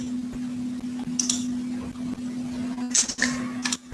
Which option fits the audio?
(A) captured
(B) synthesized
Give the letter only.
A